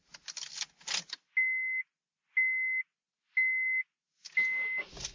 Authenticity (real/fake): real